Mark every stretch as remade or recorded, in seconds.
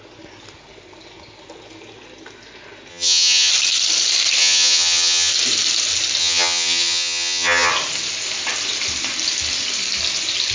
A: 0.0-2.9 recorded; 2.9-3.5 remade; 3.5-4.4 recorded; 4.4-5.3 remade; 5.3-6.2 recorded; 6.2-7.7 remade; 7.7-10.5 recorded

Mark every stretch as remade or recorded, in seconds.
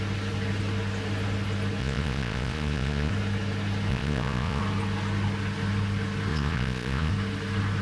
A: 0.0-1.8 recorded; 1.8-3.1 remade; 3.1-3.9 recorded; 3.9-4.6 remade; 4.6-6.3 recorded; 6.3-7.1 remade; 7.1-7.8 recorded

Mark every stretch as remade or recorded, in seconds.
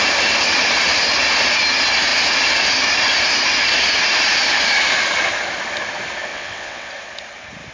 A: 0.0-6.3 recorded; 6.3-6.9 remade; 6.9-7.7 recorded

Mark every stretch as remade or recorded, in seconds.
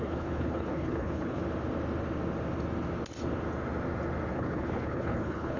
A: 0.0-1.4 remade; 1.4-4.3 recorded; 4.3-5.6 remade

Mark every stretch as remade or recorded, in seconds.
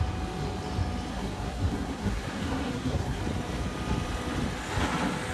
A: 0.0-1.1 recorded; 1.1-3.2 remade; 3.2-5.3 recorded